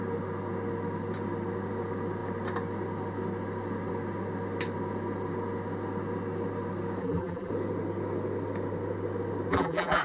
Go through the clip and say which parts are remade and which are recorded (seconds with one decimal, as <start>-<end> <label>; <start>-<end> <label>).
0.0-7.0 recorded; 7.0-7.5 remade; 7.5-9.5 recorded; 9.5-10.0 remade